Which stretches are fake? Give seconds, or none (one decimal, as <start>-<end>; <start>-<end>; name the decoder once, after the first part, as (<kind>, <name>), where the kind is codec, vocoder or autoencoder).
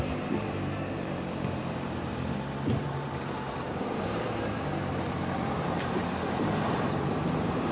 0.0-2.1 (vocoder, BigVGAN v2); 2.8-7.7